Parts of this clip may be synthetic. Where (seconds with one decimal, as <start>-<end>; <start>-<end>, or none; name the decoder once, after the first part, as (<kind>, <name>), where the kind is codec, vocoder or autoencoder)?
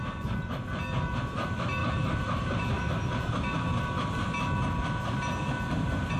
1.8-2.7 (vocoder, BigVGAN v2)